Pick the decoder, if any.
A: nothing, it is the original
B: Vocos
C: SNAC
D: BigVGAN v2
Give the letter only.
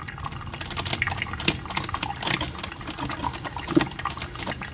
A